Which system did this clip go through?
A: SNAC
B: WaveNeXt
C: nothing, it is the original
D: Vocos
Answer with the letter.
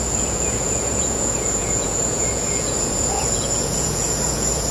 D